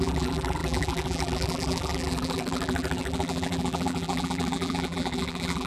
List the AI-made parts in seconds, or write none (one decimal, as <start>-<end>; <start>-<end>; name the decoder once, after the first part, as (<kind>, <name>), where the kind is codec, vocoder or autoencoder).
0.0-5.7 (vocoder, BigVGAN v2)